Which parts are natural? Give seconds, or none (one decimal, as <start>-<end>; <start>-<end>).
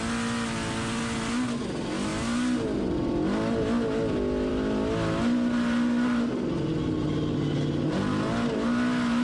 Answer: 0.0-9.2